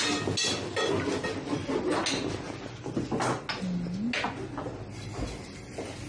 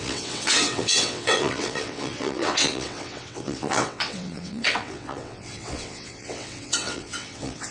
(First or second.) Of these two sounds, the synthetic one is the second